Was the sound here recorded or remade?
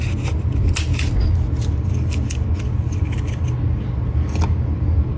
recorded